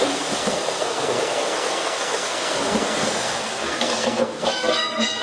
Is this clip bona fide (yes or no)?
no